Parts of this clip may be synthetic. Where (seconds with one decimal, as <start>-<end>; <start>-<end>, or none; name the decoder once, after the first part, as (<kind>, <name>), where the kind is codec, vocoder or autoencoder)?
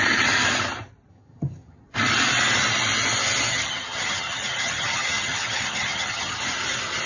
1.1-1.8 (vocoder, HiFi-GAN); 3.5-6.4